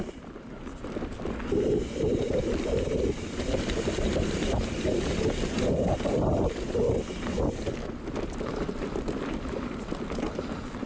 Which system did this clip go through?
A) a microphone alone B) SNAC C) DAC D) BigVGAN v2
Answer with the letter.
D